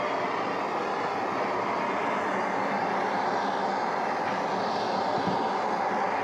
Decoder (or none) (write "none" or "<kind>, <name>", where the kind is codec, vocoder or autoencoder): none